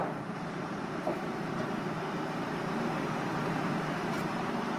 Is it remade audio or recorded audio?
remade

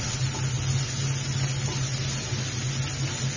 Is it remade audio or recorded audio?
recorded